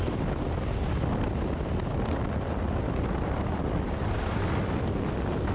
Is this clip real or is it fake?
real